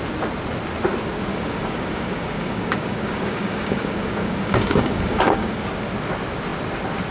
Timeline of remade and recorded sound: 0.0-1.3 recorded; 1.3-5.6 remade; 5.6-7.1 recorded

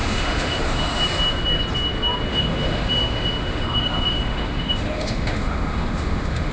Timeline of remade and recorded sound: 0.0-1.0 remade; 1.0-2.3 recorded; 2.3-6.5 remade

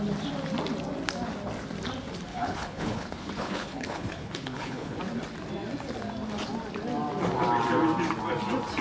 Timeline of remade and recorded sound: 0.0-2.3 recorded; 2.3-5.0 remade; 5.0-8.8 recorded

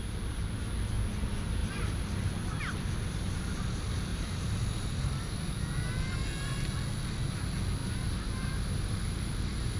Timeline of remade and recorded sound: 0.0-1.6 recorded; 1.6-2.3 remade; 2.3-4.1 recorded; 4.1-5.6 remade; 5.6-7.8 recorded; 7.8-9.8 remade

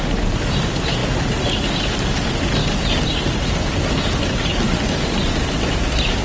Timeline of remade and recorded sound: 0.0-6.2 recorded

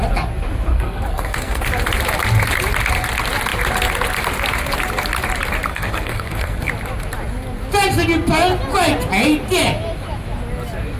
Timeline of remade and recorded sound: 0.0-0.7 recorded; 0.7-1.7 remade; 1.7-5.7 recorded; 5.7-6.7 remade; 6.7-11.0 recorded

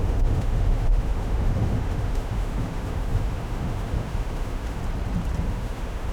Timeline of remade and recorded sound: 0.0-4.8 remade; 4.8-5.4 recorded; 5.4-6.1 remade